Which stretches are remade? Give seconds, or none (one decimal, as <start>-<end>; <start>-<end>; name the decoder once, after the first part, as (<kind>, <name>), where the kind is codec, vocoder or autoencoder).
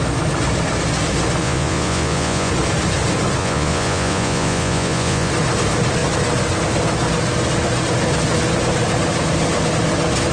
1.4-2.5 (vocoder, Vocos); 3.4-5.3